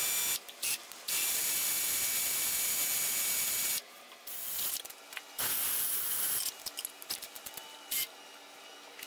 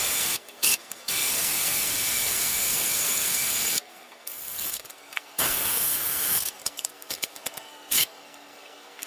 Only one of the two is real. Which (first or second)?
first